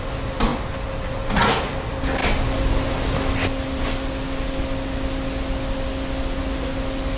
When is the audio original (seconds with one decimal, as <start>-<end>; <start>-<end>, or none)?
0.0-7.2